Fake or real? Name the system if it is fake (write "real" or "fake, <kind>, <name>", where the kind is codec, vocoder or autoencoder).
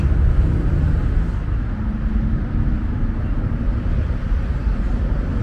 real